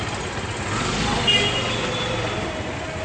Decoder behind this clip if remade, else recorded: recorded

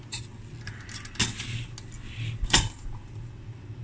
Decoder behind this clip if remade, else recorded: recorded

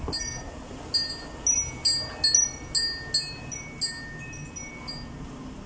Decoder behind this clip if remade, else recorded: recorded